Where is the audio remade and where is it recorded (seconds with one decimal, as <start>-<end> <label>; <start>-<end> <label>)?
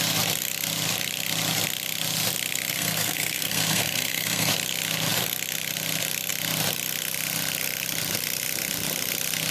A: 0.0-2.7 recorded; 2.7-4.5 remade; 4.5-9.5 recorded